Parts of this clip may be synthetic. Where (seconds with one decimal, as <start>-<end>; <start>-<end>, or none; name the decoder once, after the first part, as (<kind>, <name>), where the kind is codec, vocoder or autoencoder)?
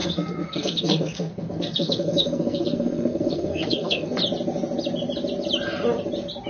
0.0-4.2 (codec, SNAC)